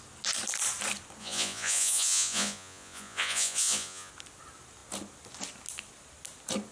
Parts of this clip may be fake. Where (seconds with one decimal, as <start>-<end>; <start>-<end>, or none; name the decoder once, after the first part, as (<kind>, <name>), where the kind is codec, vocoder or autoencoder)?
1.2-4.1 (vocoder, Vocos)